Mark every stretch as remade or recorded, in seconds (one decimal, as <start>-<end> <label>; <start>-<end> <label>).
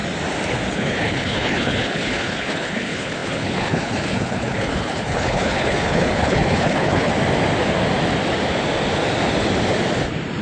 0.0-0.7 recorded; 0.7-7.1 remade; 7.1-10.4 recorded